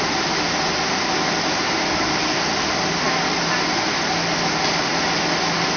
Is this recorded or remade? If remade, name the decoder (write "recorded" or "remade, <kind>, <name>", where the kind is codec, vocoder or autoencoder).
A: recorded